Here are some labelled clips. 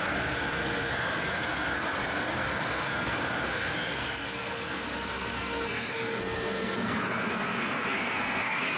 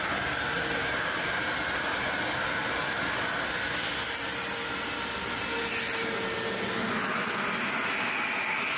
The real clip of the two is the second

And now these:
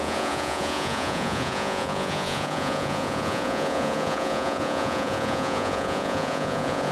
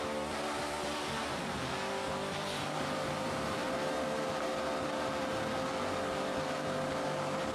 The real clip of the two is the second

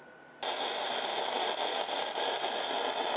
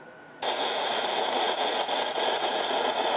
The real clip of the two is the first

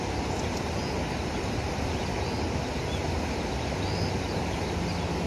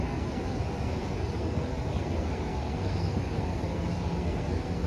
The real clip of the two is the first